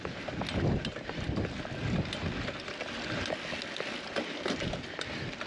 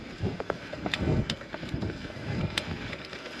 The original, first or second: first